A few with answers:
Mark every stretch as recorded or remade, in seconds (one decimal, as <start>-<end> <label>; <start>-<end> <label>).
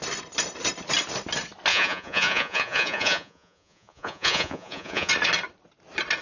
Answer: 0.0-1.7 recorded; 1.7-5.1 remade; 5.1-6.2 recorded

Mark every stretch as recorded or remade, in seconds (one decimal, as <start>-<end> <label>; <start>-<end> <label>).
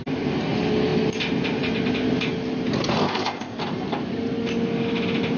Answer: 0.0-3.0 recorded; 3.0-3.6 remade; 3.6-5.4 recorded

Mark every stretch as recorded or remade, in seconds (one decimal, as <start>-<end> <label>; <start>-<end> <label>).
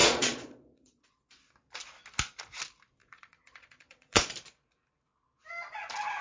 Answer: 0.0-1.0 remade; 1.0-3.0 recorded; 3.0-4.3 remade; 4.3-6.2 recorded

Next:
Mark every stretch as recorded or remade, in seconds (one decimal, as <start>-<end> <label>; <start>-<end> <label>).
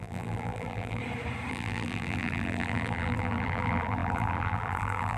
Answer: 0.0-1.0 remade; 1.0-1.5 recorded; 1.5-5.2 remade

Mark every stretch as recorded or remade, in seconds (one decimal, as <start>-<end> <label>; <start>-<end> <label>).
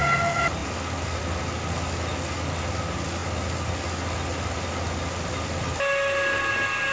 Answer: 0.0-6.9 recorded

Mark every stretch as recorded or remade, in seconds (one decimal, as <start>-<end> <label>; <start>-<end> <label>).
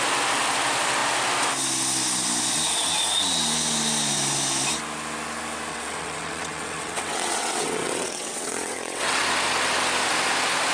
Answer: 0.0-5.7 recorded; 5.7-9.2 remade; 9.2-10.7 recorded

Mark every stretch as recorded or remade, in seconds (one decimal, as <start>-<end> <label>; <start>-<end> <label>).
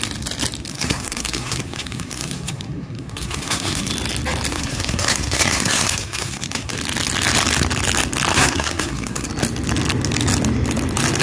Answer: 0.0-0.7 recorded; 0.7-3.9 remade; 3.9-4.5 recorded; 4.5-6.8 remade; 6.8-8.3 recorded; 8.3-9.3 remade; 9.3-11.2 recorded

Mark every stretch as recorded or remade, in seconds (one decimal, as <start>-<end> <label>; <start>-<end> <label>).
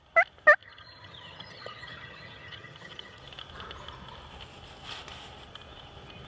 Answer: 0.0-0.6 recorded; 0.6-3.2 remade; 3.2-6.3 recorded